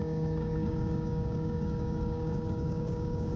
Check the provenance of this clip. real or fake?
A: fake